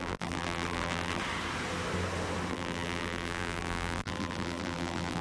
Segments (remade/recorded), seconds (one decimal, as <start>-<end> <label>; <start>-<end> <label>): 0.0-1.2 remade; 1.2-2.5 recorded; 2.5-5.2 remade